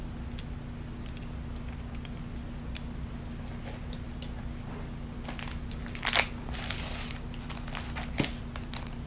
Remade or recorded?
recorded